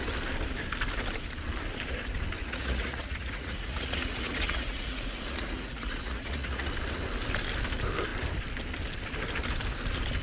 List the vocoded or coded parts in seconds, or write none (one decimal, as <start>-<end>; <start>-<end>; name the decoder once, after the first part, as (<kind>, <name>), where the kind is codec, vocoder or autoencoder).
2.4-6.7 (vocoder, Vocos)